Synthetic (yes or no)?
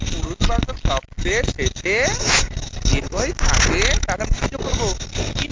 no